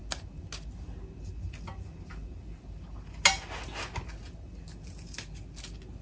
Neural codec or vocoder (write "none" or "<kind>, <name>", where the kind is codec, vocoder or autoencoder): none